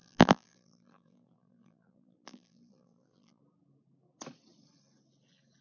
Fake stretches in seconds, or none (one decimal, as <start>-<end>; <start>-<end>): 0.0-3.4